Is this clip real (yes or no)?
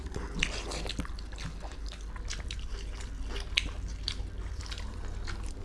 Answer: yes